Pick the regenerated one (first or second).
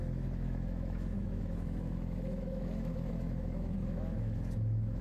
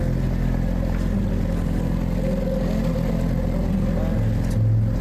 first